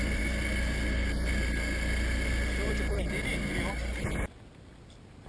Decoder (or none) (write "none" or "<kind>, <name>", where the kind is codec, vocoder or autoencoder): none